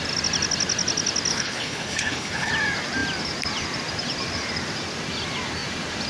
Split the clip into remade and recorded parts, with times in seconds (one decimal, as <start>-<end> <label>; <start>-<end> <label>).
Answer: 0.0-1.3 recorded; 1.3-2.5 remade; 2.5-6.1 recorded